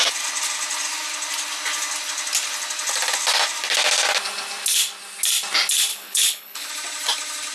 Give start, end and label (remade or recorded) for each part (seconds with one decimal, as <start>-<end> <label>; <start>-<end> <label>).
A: 0.0-5.9 recorded; 5.9-6.7 remade; 6.7-7.5 recorded